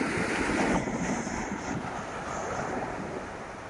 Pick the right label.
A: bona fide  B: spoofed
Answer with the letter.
A